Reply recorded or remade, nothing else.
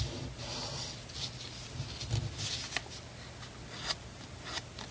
recorded